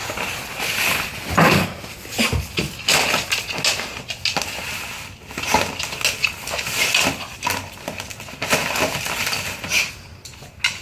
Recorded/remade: recorded